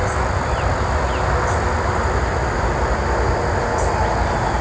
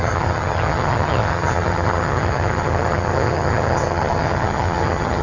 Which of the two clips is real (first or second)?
first